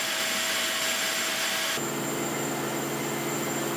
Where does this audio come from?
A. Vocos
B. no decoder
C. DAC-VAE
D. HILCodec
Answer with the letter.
B